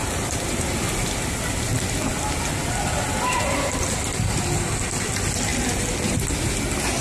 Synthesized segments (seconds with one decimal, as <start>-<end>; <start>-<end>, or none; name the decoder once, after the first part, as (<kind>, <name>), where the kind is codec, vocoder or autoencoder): none